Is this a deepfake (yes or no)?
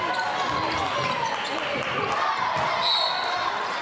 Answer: no